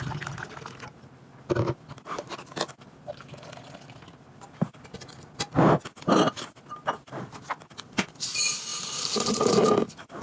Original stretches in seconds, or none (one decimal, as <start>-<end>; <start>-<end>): 0.0-8.7; 9.7-10.2